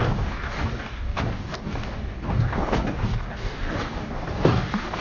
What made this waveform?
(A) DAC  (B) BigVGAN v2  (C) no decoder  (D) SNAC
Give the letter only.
A